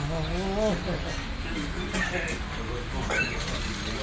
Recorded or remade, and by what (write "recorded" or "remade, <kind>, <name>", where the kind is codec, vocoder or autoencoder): recorded